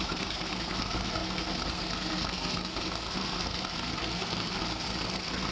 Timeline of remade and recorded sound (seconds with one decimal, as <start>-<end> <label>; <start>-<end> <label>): 0.0-5.5 remade